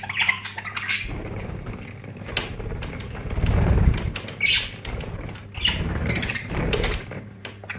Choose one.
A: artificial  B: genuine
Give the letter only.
A